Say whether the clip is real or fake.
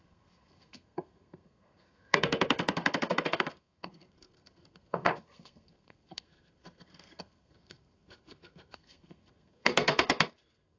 fake